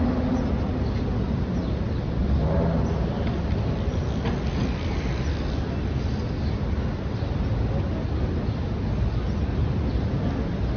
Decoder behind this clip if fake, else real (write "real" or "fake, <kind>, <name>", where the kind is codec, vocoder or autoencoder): real